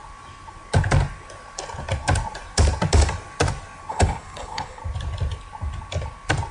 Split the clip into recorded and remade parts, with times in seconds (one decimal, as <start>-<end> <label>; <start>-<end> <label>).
0.0-3.9 recorded; 3.9-4.8 remade; 4.8-6.5 recorded